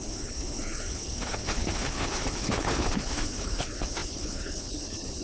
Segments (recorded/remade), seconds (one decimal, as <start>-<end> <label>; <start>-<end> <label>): 0.0-5.2 remade